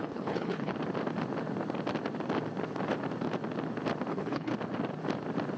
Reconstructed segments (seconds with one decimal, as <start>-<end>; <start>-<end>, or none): 0.0-0.7; 4.1-4.5